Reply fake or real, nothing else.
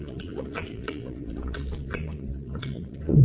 fake